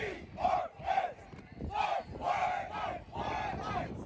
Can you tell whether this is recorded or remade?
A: recorded